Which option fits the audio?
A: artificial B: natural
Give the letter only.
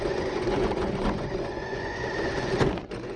A